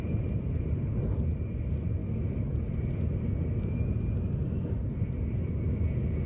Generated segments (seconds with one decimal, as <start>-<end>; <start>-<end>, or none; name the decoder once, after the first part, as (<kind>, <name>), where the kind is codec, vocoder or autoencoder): none